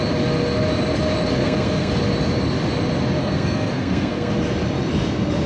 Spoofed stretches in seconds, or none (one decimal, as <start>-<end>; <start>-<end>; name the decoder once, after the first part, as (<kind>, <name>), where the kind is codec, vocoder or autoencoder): 1.4-1.9 (codec, SNAC); 3.2-4.3